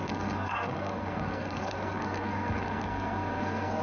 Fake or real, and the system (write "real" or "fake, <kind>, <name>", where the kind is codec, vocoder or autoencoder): fake, codec, SNAC